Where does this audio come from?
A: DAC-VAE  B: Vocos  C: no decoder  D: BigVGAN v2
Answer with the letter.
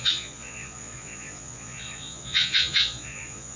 B